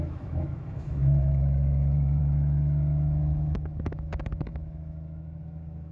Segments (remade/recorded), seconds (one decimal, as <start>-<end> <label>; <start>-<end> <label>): 0.0-5.9 remade